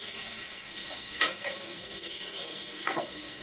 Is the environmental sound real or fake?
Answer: fake